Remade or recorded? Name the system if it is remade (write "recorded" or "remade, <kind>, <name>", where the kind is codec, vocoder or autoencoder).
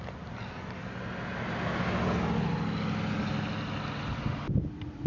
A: recorded